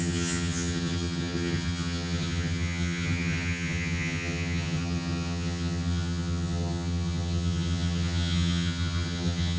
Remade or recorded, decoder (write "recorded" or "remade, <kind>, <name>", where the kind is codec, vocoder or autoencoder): remade, vocoder, HiFi-GAN